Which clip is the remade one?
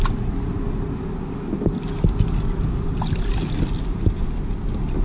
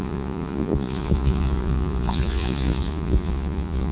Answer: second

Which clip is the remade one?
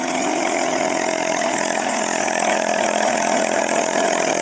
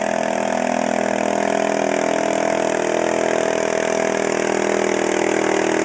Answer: first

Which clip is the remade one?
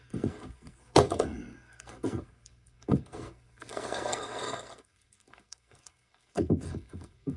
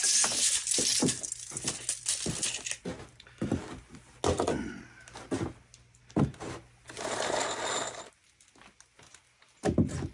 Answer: first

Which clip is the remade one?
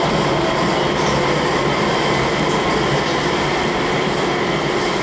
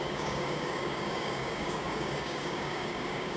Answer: second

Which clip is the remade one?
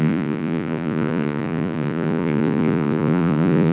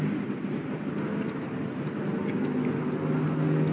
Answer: first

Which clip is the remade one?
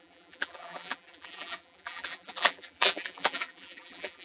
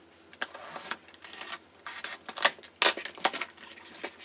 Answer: first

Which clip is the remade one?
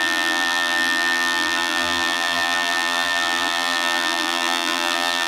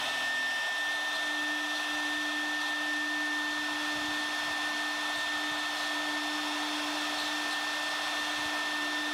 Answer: first